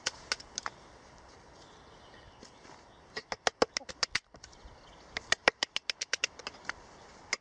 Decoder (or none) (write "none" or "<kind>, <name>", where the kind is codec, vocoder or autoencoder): none